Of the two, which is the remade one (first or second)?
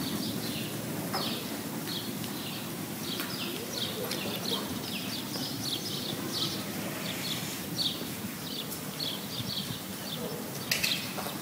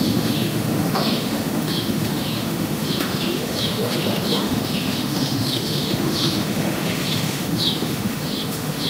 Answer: second